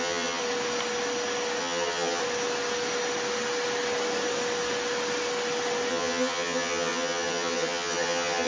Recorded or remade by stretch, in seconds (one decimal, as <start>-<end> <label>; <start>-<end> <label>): 0.0-0.4 remade; 0.4-1.6 recorded; 1.6-2.2 remade; 2.2-5.9 recorded; 5.9-8.5 remade